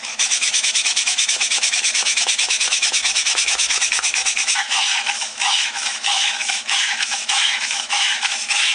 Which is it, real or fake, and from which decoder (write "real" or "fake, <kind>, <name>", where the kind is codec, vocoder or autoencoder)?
fake, autoencoder, DAC-VAE